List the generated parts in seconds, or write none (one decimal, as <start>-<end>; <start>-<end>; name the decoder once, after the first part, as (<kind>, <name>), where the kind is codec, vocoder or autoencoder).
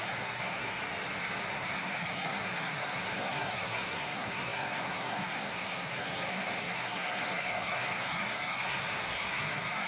0.0-0.8 (codec, SNAC); 1.4-9.9